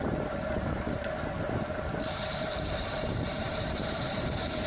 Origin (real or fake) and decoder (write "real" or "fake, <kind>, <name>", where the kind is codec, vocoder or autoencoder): fake, vocoder, BigVGAN v2